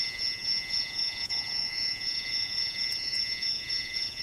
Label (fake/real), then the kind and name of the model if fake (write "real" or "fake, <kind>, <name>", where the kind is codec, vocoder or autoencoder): fake, vocoder, Vocos